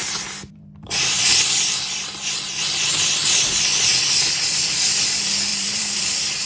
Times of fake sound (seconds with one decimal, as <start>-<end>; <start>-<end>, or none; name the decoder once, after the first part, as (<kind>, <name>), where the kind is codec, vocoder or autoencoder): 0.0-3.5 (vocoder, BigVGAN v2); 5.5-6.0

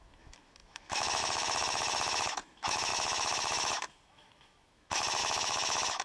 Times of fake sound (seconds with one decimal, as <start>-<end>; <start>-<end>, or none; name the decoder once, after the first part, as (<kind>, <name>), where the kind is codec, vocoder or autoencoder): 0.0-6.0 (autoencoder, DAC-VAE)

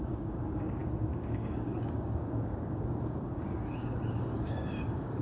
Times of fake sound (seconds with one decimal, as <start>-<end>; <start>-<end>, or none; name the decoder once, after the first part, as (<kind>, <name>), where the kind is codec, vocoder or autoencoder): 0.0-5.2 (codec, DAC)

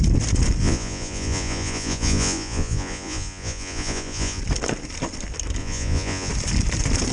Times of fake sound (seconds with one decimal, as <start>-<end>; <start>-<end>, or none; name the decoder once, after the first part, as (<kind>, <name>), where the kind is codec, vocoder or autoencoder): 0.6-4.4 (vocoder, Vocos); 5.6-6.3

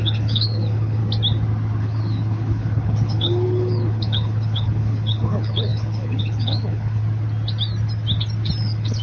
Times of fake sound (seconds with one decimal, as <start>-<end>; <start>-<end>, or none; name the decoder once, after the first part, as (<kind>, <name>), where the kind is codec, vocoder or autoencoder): 0.0-1.0 (codec, HILCodec); 1.8-7.0; 8.6-9.0